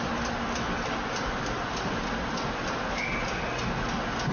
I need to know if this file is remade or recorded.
recorded